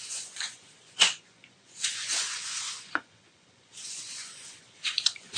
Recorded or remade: remade